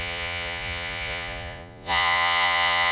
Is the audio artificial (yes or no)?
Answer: yes